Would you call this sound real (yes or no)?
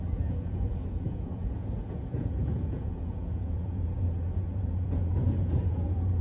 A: no